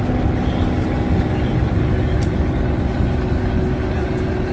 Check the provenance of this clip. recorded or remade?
recorded